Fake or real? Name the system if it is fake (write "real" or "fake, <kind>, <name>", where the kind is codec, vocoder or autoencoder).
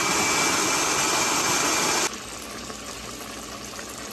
real